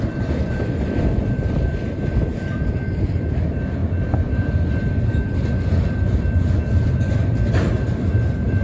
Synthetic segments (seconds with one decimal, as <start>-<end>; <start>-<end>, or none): 0.0-8.6